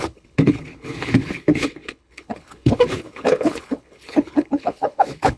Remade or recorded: remade